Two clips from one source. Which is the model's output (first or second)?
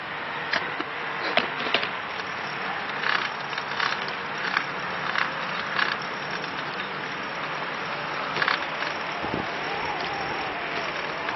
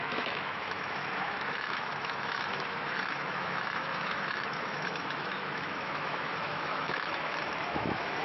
second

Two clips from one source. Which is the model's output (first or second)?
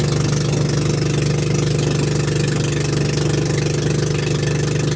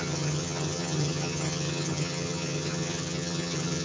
second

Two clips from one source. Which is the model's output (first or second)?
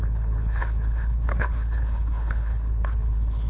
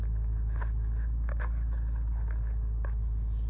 first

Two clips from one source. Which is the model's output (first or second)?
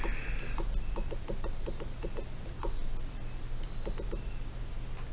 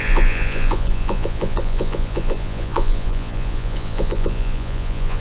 second